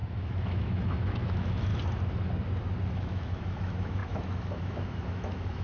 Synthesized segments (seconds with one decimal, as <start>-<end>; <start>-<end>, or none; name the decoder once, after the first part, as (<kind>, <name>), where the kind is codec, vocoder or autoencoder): 0.0-1.7 (autoencoder, DAC-VAE); 2.9-5.6